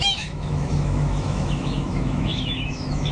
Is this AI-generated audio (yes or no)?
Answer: yes